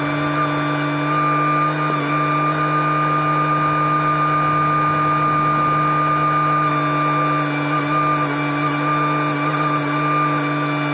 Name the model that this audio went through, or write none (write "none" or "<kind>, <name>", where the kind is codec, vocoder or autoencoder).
none